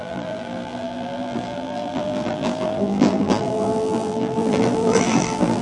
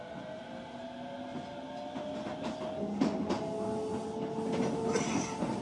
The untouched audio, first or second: second